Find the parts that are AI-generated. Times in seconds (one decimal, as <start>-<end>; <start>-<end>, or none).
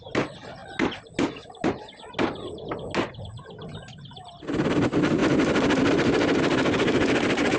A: none